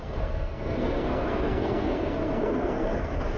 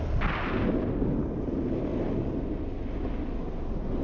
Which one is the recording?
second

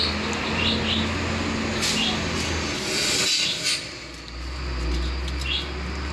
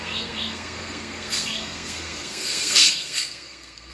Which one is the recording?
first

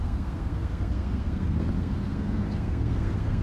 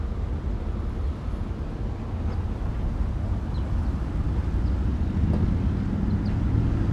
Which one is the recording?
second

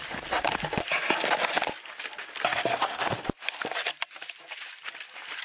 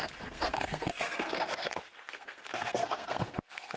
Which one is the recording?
first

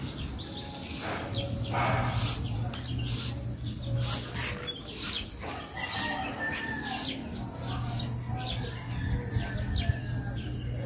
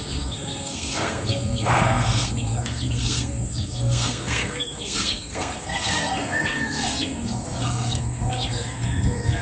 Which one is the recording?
first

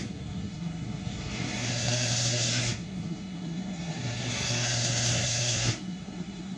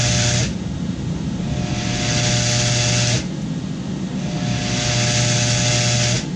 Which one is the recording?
second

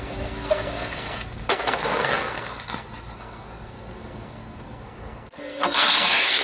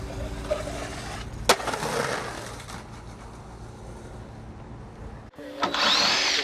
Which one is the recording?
second